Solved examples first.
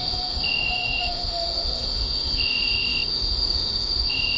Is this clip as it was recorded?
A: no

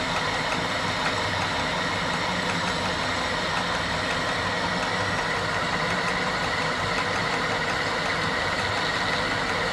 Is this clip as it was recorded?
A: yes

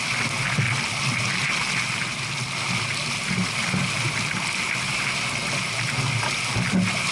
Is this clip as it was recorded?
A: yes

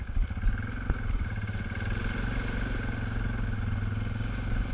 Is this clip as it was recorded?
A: yes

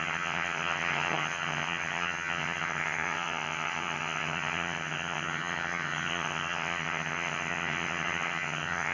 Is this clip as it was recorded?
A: no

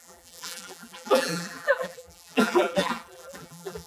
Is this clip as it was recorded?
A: no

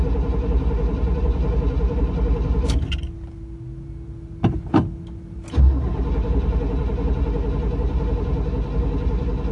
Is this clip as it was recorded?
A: yes